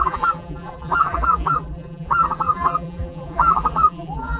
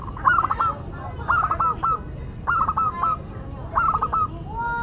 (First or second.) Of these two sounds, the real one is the second